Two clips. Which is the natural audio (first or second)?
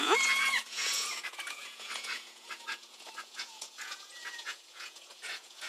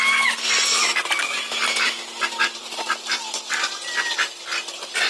second